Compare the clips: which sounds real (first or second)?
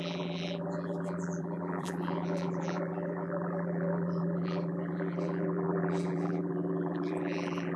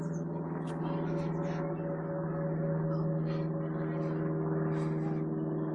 second